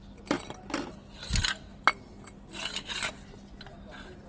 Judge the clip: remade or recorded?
recorded